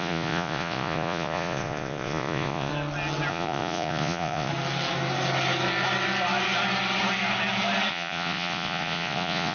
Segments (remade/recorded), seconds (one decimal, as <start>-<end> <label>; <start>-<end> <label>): 0.0-2.7 remade; 2.7-3.3 recorded; 3.3-4.5 remade; 4.5-7.9 recorded; 7.9-9.5 remade